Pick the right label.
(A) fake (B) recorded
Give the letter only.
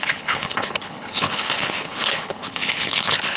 A